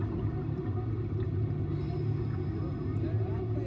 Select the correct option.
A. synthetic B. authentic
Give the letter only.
B